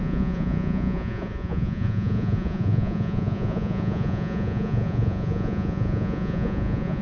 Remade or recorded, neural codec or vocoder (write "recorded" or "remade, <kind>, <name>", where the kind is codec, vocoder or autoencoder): remade, vocoder, Vocos